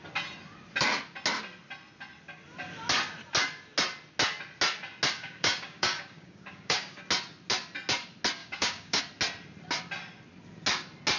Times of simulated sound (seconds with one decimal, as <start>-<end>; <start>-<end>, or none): 5.2-7.0; 8.4-9.0